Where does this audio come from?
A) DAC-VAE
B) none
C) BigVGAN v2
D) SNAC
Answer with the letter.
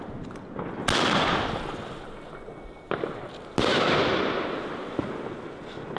B